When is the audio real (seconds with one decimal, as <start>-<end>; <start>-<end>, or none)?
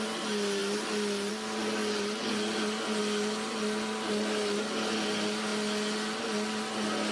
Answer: 0.0-7.1